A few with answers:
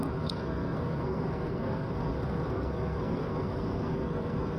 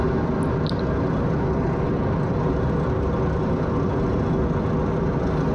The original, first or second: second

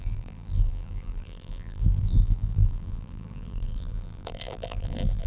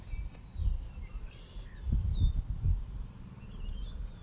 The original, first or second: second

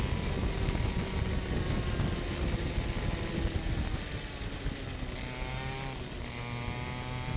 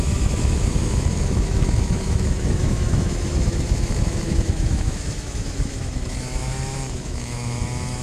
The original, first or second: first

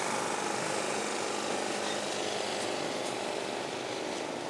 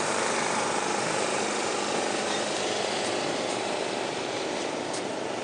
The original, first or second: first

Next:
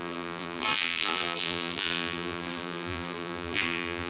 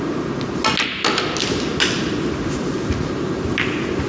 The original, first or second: second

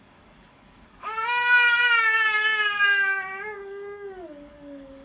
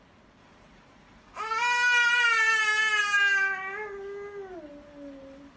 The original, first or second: second